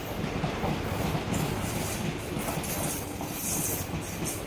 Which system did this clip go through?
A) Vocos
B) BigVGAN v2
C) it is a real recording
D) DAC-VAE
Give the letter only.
C